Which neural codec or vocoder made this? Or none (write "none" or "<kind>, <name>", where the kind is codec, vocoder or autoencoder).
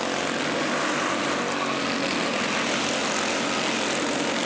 none